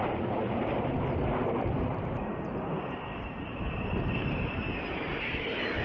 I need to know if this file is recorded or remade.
remade